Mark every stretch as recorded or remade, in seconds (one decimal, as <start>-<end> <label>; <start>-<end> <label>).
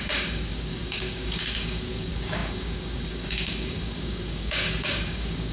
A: 0.0-5.5 remade